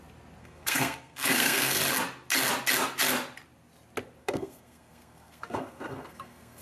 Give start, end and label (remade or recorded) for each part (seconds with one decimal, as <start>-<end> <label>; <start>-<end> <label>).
0.0-0.4 recorded; 0.4-1.8 remade; 1.8-4.2 recorded; 4.2-6.6 remade